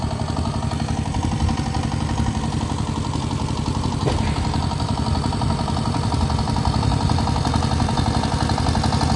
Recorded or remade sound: recorded